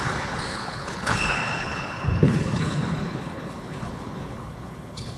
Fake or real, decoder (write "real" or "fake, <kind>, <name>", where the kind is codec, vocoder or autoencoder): fake, codec, HILCodec